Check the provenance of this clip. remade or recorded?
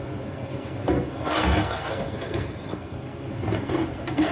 remade